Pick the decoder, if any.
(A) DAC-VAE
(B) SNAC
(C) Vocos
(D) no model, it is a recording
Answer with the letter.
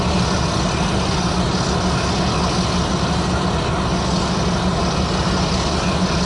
D